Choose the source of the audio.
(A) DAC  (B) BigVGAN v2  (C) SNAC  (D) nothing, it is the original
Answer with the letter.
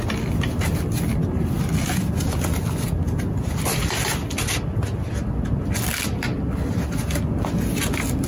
D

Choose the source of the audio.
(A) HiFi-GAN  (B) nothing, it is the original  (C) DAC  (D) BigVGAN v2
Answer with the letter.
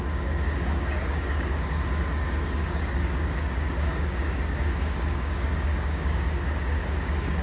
C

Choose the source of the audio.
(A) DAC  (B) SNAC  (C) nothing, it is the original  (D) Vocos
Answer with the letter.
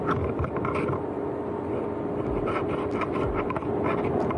C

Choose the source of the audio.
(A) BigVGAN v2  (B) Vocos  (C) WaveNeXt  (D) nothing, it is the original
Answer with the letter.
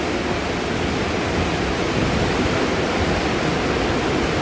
D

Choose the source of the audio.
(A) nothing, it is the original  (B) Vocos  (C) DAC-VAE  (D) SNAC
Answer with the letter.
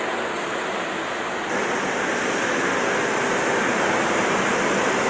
A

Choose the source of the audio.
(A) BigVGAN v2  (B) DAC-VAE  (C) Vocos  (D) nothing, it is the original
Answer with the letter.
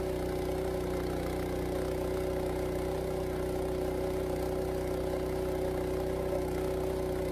D